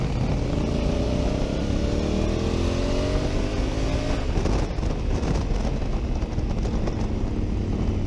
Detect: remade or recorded recorded